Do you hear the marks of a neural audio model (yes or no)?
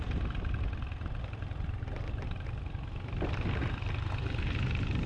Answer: no